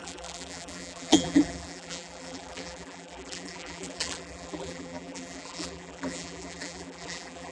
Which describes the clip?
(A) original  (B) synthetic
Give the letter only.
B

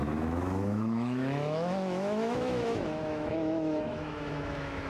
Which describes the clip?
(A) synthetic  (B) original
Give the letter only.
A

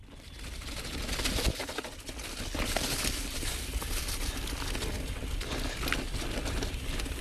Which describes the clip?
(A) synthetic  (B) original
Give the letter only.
B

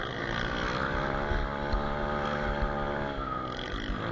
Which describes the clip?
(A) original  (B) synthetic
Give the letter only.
A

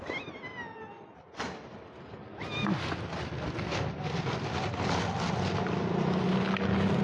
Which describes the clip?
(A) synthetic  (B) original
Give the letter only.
B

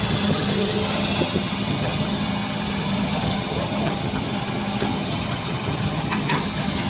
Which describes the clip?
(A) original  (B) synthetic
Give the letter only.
B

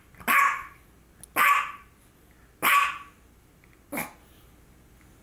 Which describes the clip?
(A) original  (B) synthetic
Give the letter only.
A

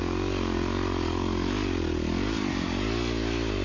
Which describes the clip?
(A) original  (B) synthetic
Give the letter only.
A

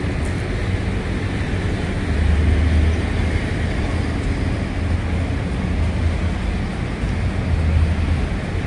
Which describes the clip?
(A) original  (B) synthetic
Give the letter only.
A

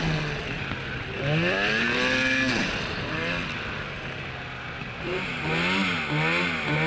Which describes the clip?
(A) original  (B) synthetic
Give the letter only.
A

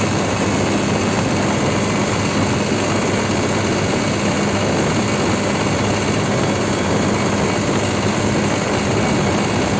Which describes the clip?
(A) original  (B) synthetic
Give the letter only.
A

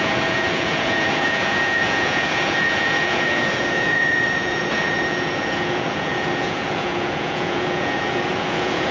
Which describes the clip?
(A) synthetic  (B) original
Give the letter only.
A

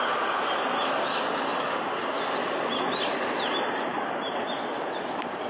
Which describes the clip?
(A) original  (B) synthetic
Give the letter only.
A